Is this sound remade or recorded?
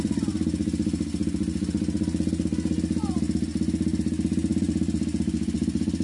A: recorded